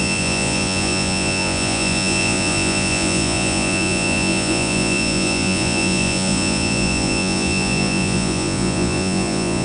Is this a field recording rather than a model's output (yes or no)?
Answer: no